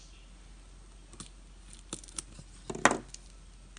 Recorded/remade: recorded